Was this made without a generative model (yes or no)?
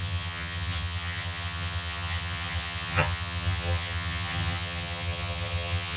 no